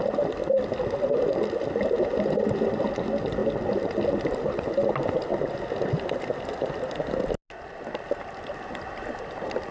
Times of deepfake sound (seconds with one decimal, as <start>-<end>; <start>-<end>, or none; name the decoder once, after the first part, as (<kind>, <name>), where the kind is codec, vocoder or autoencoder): none

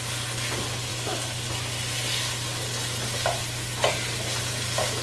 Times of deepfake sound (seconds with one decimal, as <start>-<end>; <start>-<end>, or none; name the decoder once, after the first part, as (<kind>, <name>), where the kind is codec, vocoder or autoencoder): none

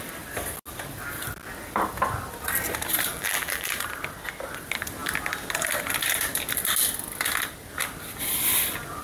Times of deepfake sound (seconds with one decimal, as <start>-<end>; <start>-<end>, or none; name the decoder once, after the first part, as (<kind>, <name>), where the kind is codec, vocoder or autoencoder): 3.1-3.7 (vocoder, BigVGAN v2)

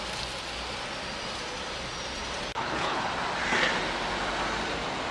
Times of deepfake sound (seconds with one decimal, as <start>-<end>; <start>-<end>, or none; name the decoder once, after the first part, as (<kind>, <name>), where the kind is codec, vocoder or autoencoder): 2.5-3.1 (codec, HILCodec)

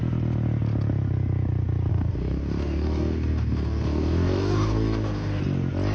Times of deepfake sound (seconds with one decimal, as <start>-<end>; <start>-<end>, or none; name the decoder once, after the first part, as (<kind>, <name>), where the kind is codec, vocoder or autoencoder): 1.9-5.4 (codec, DAC)

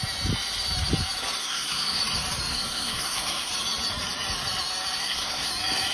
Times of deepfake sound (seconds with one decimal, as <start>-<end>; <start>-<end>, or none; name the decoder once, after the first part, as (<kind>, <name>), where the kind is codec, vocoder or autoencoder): 1.4-2.0 (codec, SNAC); 2.5-3.5; 5.0-5.5

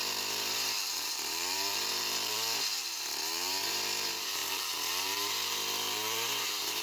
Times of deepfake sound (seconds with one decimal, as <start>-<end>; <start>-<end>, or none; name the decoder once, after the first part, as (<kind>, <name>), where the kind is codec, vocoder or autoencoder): 0.0-6.8 (vocoder, BigVGAN v2)

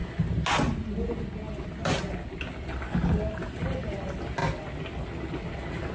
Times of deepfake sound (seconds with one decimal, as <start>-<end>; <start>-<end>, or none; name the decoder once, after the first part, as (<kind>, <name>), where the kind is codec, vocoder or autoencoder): none